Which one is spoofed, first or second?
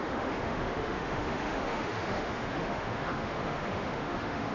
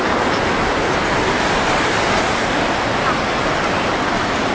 first